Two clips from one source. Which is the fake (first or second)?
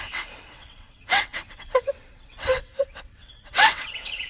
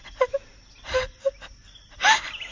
first